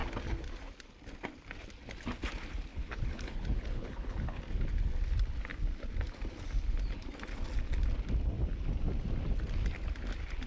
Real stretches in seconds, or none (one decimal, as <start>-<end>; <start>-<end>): 0.0-2.7; 4.4-10.5